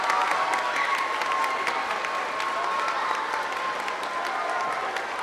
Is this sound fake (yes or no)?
no